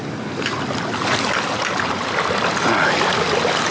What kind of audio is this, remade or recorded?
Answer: recorded